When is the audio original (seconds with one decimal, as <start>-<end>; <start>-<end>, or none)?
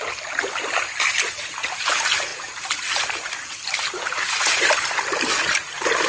0.0-6.1